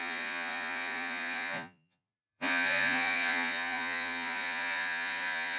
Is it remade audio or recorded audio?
remade